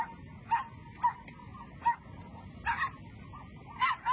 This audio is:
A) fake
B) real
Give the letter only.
B